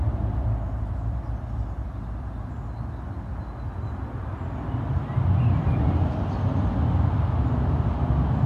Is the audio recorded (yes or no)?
yes